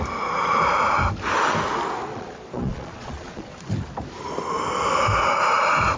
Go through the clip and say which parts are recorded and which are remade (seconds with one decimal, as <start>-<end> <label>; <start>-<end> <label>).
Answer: 0.0-2.1 recorded; 2.1-3.7 remade; 3.7-6.0 recorded

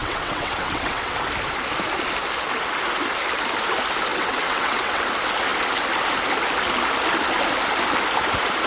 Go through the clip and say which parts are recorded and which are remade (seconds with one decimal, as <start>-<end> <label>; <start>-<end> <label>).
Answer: 0.0-1.2 remade; 1.2-4.1 recorded; 4.1-5.0 remade; 5.0-8.7 recorded

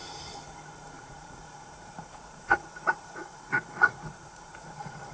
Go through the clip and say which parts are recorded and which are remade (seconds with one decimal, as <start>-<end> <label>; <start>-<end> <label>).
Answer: 0.0-1.0 recorded; 1.0-5.1 remade

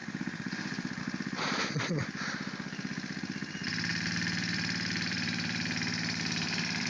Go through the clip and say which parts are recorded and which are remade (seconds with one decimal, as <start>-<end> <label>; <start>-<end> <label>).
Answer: 0.0-1.0 remade; 1.0-3.9 recorded; 3.9-6.9 remade

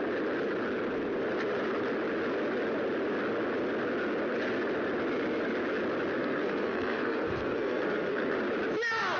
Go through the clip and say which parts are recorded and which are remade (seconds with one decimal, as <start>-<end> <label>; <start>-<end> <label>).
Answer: 0.0-6.2 recorded; 6.2-8.4 remade; 8.4-9.2 recorded